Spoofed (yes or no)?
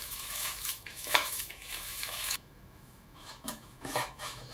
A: yes